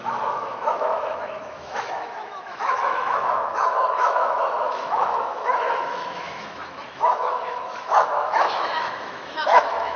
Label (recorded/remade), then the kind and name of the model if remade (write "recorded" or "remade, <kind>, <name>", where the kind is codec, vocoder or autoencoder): remade, autoencoder, DAC-VAE